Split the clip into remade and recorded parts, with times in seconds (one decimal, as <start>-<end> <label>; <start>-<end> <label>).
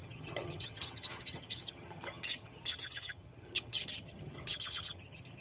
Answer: 0.0-5.4 remade